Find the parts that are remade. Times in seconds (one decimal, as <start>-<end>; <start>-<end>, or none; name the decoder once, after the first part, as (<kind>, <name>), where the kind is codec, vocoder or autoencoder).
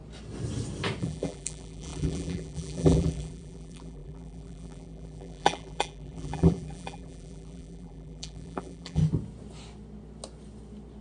1.0-9.0 (vocoder, BigVGAN v2)